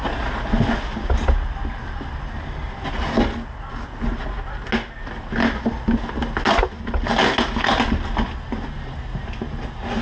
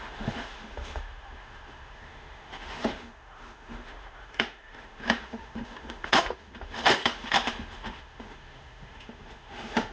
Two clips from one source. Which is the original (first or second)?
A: first